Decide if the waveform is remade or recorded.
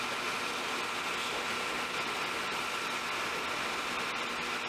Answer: recorded